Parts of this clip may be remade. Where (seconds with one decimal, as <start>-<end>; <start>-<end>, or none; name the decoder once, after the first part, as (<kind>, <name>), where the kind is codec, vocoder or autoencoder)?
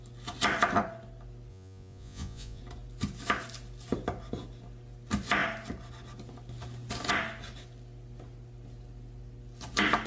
1.5-2.6 (vocoder, Vocos)